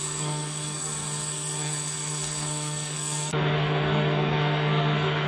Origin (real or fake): fake